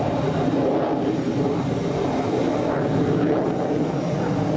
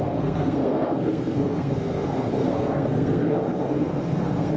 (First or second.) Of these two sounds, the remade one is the second